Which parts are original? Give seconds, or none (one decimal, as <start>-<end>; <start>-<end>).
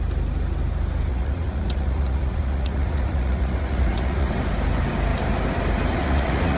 0.0-1.1; 4.3-6.0